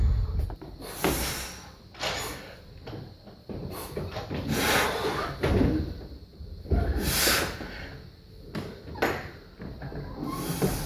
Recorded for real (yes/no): yes